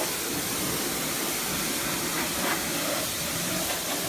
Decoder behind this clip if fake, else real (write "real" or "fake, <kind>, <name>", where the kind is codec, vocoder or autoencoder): real